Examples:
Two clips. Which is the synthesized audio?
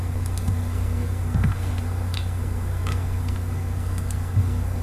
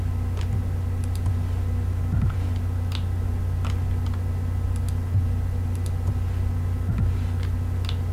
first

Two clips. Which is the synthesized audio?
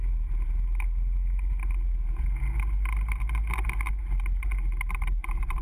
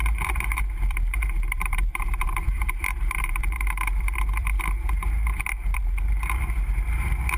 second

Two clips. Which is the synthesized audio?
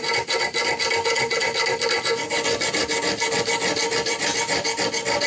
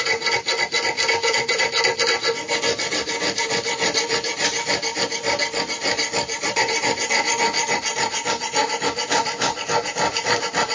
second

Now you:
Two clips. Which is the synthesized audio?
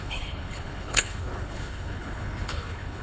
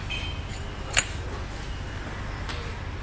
first